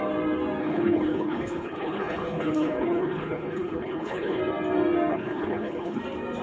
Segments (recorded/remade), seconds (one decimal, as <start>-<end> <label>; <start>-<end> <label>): 0.0-0.6 recorded; 0.6-4.4 remade; 4.4-5.1 recorded; 5.1-6.0 remade; 6.0-6.4 recorded